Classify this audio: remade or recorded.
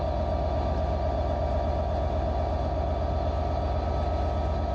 recorded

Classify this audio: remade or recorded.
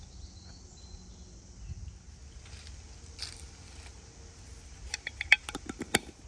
recorded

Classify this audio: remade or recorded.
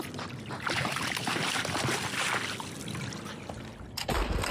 recorded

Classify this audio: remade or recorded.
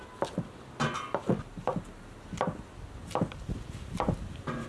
recorded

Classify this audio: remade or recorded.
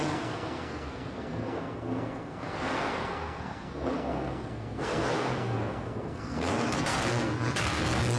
remade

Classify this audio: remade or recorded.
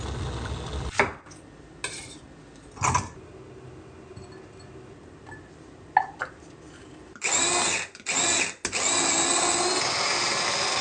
recorded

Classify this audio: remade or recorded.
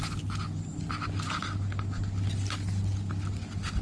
recorded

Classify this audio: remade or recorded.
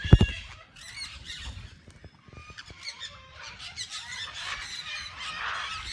recorded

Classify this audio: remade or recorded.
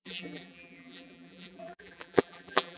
remade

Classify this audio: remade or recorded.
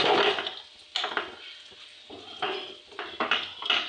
recorded